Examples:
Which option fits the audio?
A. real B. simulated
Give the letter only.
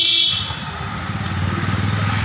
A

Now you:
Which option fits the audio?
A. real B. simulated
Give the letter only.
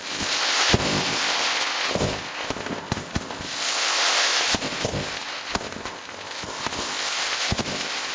B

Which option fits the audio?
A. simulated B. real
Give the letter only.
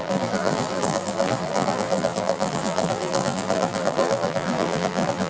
A